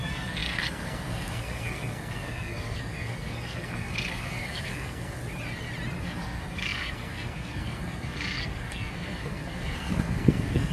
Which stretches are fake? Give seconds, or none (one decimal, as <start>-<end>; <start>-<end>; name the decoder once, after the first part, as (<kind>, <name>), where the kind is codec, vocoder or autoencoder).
0.0-5.2 (codec, SNAC); 6.0-10.7